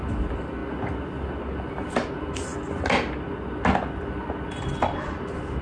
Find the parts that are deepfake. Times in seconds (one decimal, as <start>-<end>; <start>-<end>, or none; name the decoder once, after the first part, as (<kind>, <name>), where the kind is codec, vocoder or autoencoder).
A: none